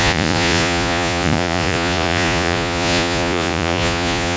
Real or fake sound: fake